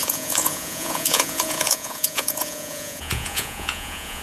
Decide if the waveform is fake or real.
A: fake